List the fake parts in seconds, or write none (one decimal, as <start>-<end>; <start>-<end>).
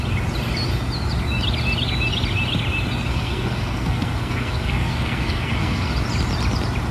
3.1-5.9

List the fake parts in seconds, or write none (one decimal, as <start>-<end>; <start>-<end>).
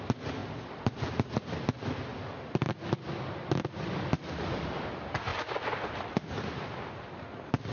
none